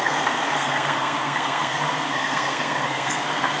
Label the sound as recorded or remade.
remade